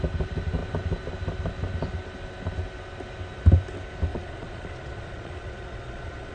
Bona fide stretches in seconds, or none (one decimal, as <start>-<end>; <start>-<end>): 0.0-4.1